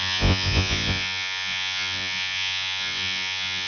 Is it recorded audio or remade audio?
remade